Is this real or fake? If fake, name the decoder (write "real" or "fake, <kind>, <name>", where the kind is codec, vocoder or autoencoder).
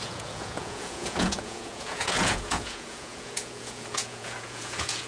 fake, vocoder, Vocos